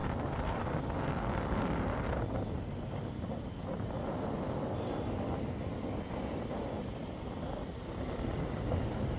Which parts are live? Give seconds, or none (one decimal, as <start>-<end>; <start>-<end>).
0.0-9.2